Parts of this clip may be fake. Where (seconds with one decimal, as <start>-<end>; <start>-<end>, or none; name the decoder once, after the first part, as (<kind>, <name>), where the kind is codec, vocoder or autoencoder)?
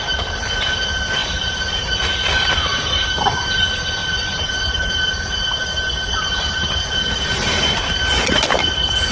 1.2-1.9 (vocoder, BigVGAN v2); 2.7-3.6; 4.0-5.5; 6.3-7.6